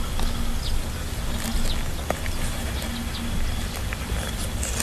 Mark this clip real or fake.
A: real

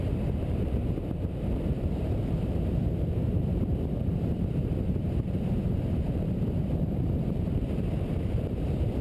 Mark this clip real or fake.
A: fake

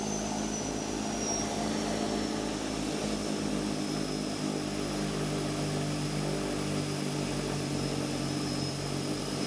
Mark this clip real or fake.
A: real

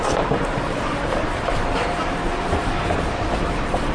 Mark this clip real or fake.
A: fake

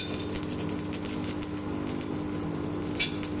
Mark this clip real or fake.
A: real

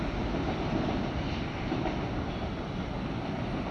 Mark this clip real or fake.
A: real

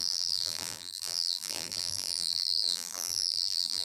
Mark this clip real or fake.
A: fake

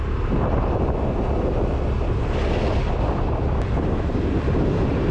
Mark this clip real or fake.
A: real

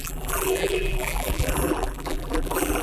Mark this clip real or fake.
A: fake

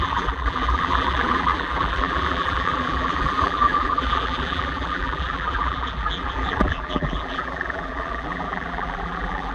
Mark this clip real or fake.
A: fake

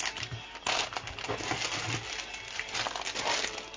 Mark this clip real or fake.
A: real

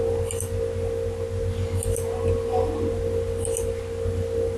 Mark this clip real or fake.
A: real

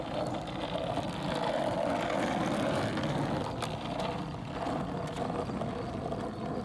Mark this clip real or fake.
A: real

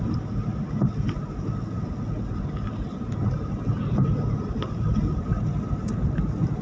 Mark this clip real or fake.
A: real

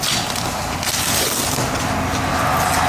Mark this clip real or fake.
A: real